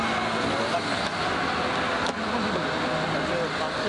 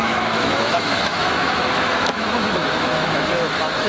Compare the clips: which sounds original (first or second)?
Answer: first